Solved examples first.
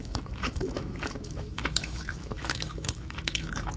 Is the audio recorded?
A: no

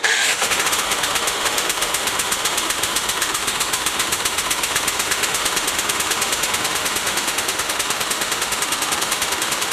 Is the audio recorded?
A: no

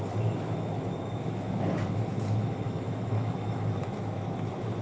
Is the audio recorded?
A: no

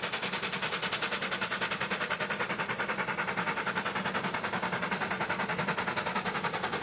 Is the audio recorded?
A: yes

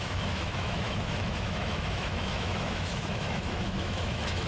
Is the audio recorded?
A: no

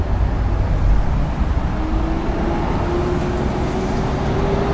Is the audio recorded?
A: yes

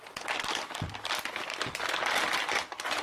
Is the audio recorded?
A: yes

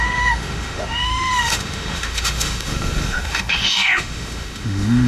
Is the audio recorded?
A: no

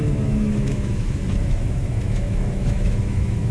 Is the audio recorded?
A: no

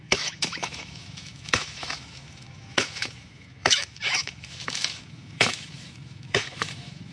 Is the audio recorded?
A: no